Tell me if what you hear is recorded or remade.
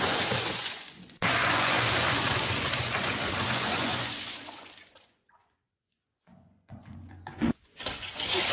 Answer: remade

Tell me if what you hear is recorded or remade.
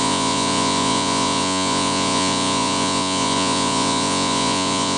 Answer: remade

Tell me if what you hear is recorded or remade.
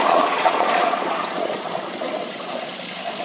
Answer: remade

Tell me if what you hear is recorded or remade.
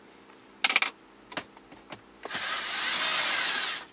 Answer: recorded